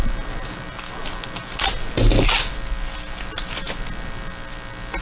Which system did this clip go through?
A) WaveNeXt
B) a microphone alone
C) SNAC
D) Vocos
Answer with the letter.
B